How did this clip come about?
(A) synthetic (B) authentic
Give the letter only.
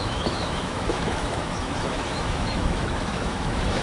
A